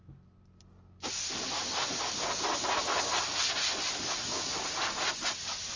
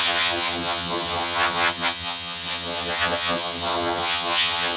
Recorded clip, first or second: first